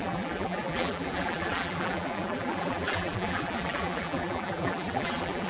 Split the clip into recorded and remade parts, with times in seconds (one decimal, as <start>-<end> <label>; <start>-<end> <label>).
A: 0.0-5.5 remade